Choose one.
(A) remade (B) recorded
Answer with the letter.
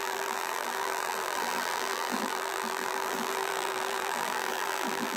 A